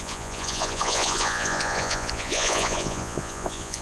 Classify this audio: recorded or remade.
remade